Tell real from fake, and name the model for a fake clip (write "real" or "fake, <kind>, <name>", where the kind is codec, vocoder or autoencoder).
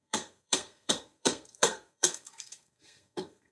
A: fake, codec, SNAC